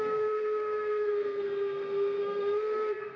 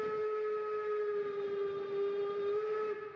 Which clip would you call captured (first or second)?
second